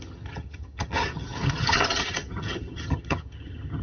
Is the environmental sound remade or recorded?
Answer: remade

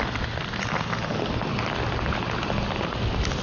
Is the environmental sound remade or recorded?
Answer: recorded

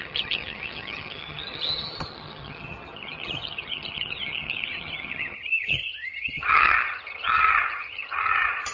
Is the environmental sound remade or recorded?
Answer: remade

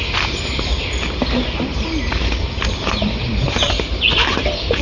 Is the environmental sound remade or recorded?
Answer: recorded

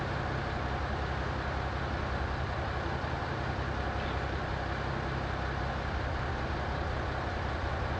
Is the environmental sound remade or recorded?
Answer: recorded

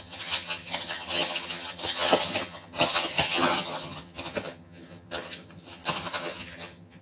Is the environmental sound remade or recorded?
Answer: remade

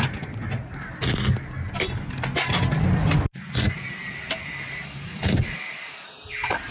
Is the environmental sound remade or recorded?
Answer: recorded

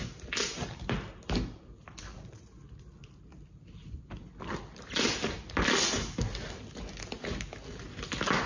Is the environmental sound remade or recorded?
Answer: recorded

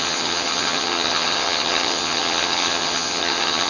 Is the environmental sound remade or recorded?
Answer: remade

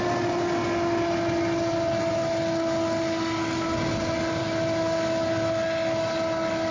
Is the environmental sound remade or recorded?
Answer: recorded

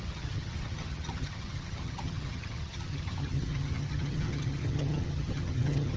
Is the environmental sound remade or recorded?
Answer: remade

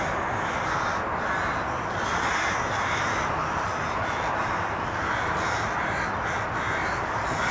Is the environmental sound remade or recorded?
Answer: recorded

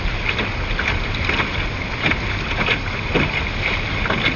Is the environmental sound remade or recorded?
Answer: recorded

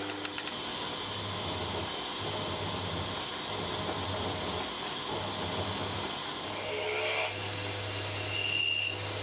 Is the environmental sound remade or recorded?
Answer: recorded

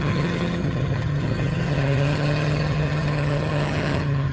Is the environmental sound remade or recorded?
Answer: remade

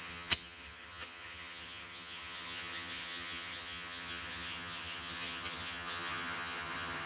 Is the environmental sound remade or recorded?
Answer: remade